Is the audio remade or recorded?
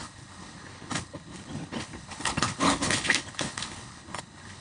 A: remade